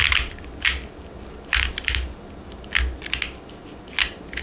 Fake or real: real